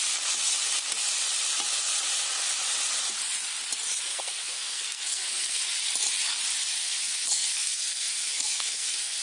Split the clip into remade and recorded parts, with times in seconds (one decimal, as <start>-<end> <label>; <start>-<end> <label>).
0.0-4.1 recorded; 4.1-5.6 remade; 5.6-6.8 recorded; 6.8-9.2 remade